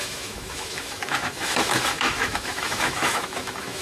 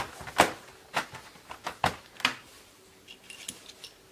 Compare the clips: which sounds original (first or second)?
second